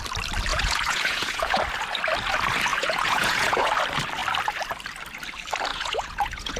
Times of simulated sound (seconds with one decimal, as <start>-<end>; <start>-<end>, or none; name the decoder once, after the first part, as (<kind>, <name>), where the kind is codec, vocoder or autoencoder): 0.5-1.6 (vocoder, Vocos); 2.7-3.7; 5.7-6.6